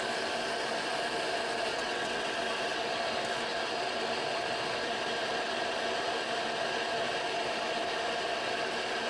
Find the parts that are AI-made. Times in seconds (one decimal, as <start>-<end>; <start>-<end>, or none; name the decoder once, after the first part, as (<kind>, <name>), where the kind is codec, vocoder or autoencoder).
1.7-2.3 (vocoder, WaveNeXt)